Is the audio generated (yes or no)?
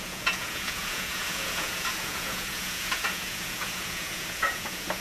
yes